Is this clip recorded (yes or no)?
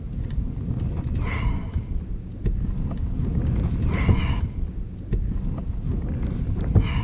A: yes